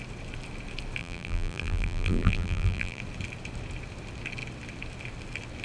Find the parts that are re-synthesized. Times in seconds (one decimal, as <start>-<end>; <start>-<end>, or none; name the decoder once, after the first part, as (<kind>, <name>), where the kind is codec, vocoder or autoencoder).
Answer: 1.0-3.0 (vocoder, BigVGAN v2)

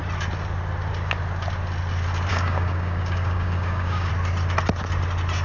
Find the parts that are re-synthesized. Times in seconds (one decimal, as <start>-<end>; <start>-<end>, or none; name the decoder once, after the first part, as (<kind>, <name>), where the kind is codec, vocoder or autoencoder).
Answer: 2.3-4.1 (codec, DAC)

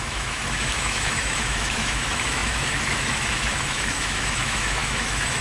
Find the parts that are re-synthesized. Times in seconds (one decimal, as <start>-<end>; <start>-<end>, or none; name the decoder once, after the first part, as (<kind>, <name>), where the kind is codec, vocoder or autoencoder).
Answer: 0.0-5.4 (autoencoder, DAC-VAE)

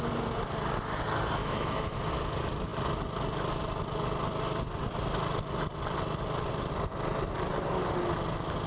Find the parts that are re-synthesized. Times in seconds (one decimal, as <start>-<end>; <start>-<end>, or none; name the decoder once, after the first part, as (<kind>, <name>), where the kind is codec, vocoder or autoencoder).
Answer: 1.4-2.1 (autoencoder, DAC-VAE)

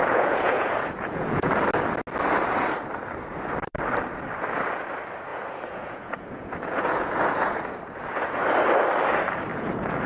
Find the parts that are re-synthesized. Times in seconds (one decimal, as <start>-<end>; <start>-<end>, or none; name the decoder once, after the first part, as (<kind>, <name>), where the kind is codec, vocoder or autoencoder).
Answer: 0.0-1.6 (vocoder, Vocos); 5.3-8.4; 9.5-10.1

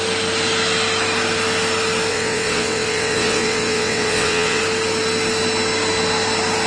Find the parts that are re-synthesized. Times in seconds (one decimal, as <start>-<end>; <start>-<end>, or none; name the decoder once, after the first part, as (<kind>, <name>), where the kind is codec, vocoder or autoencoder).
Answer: 2.1-4.6 (vocoder, WaveNeXt)

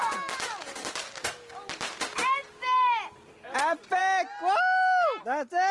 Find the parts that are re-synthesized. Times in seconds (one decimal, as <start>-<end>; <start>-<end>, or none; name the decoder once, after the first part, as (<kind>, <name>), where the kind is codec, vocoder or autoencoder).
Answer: none

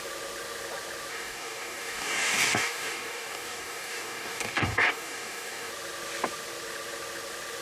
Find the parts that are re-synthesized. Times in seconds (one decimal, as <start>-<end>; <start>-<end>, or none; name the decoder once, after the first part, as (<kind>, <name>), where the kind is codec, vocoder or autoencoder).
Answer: 1.1-5.7 (codec, DAC)